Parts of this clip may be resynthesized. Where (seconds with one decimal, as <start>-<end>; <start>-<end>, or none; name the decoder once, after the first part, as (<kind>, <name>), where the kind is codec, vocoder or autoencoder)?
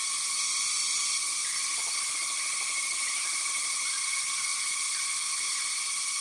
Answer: 0.0-4.5 (vocoder, BigVGAN v2); 5.8-6.2